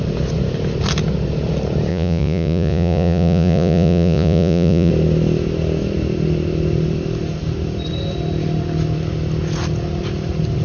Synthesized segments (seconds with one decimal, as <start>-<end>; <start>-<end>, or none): 1.9-4.9